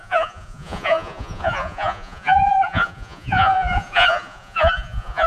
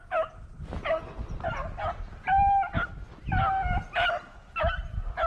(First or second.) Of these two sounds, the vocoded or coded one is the first